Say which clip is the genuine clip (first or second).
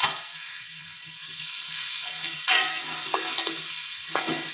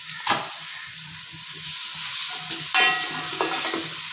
second